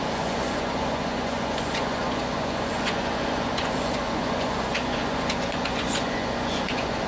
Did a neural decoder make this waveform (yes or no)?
yes